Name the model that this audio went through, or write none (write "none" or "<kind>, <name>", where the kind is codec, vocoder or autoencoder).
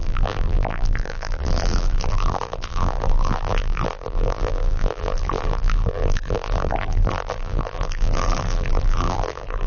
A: vocoder, BigVGAN v2